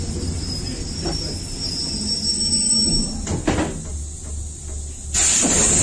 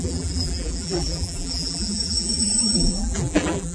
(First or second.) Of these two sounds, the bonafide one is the first